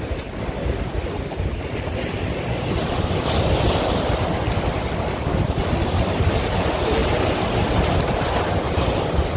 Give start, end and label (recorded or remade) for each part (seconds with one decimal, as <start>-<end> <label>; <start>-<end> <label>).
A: 0.0-9.4 recorded

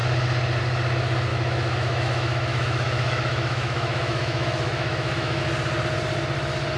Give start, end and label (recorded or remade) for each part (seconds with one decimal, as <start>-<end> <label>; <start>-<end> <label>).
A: 0.0-1.3 recorded; 1.3-5.4 remade; 5.4-6.8 recorded